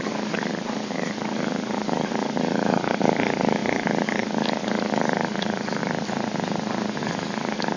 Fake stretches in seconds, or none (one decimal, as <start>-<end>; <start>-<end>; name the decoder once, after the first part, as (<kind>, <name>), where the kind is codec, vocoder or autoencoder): 0.0-5.8 (codec, DAC); 7.0-7.8